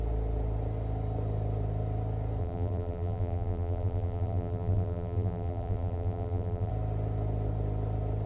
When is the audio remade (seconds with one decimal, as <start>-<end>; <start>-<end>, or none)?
2.4-6.7